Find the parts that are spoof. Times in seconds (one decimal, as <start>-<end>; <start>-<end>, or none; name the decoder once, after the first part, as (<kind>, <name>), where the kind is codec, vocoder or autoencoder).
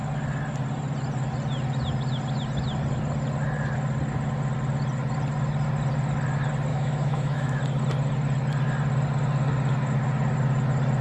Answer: 6.7-7.6 (autoencoder, DAC-VAE)